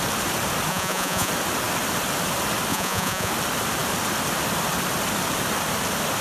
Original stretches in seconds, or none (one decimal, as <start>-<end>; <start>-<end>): 0.0-0.7; 1.3-2.7; 3.3-6.2